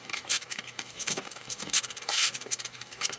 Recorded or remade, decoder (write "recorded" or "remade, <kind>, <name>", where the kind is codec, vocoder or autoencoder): remade, codec, DAC